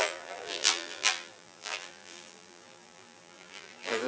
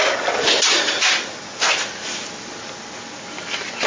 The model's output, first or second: first